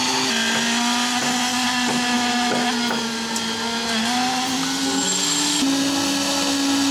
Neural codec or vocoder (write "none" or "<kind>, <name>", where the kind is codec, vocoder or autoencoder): none